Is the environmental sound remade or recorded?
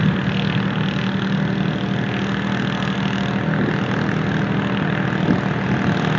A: recorded